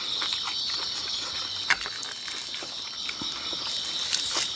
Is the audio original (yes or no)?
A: yes